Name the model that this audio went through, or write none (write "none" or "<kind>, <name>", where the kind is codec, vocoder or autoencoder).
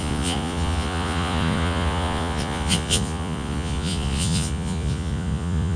vocoder, Vocos